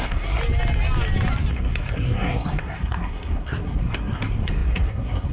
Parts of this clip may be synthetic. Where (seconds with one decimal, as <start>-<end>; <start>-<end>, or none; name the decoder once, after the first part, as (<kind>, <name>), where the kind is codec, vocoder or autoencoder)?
0.0-0.4 (codec, SNAC); 1.5-5.3